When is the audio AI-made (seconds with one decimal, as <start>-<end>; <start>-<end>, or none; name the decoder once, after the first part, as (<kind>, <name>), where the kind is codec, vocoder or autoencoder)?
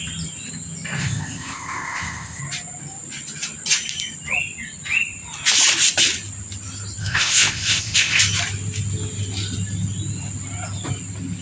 1.0-2.4 (codec, ZipCodec); 7.0-8.2